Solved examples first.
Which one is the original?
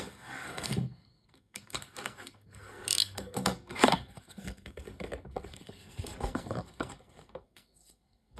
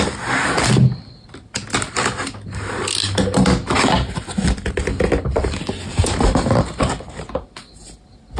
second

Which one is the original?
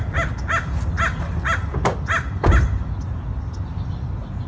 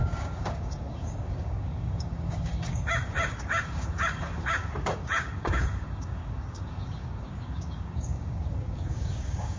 first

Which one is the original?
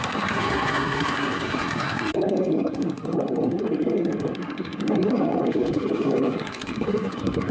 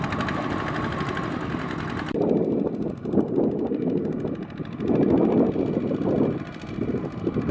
second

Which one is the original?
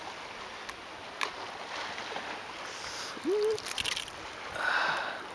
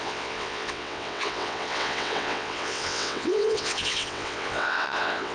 first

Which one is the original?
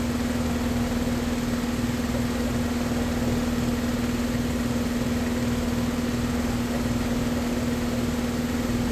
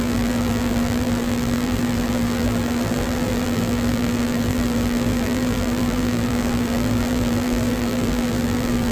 first